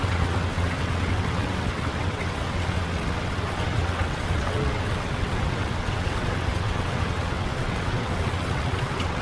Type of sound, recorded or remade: remade